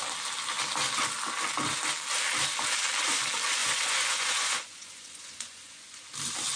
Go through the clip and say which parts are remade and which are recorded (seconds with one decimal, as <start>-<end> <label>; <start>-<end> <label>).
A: 0.0-3.6 recorded; 3.6-6.0 remade; 6.0-6.6 recorded